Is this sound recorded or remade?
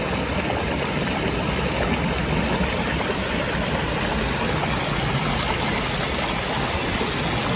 recorded